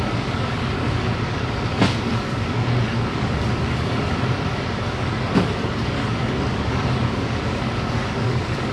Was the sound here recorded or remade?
remade